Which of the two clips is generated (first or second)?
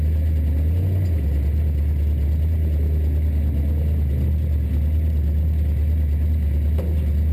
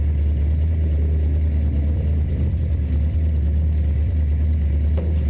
second